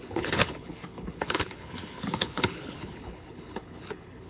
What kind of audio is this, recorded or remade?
remade